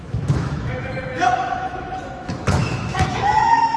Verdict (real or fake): fake